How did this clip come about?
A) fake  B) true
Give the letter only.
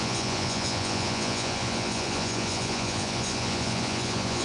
A